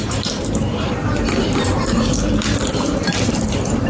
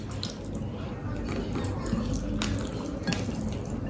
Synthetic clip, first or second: first